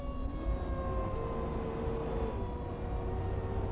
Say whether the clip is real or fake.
real